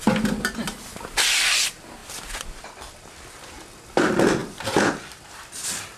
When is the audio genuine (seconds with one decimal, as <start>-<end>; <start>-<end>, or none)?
0.0-2.0; 3.3-4.4; 5.4-6.0